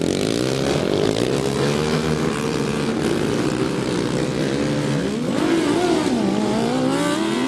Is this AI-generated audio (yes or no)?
no